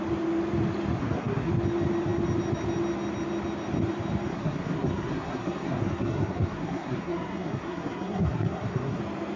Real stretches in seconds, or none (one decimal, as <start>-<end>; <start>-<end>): 0.0-1.0; 1.5-4.3; 9.0-9.4